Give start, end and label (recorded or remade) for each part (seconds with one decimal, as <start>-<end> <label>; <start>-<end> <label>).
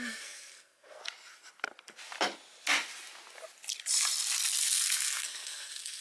0.0-1.0 remade; 1.0-4.6 recorded; 4.6-6.0 remade